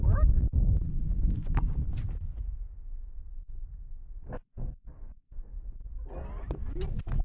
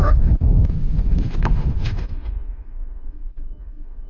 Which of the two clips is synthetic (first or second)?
second